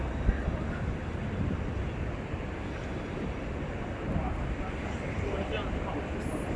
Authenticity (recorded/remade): recorded